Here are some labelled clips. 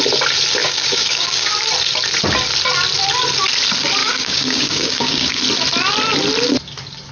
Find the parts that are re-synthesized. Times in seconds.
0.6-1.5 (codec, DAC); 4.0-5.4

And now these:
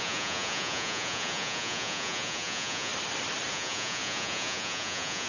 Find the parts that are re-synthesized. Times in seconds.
0.0-2.9 (vocoder, Vocos); 3.5-5.3

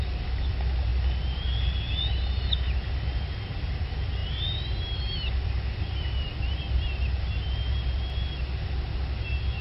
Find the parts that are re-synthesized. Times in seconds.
none

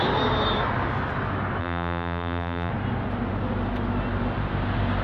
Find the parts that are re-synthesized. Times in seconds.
1.6-2.7 (vocoder, BigVGAN v2)

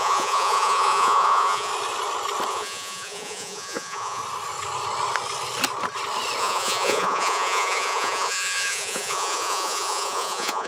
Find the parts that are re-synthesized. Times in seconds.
0.0-1.7 (vocoder, Vocos); 2.5-4.2; 6.4-10.7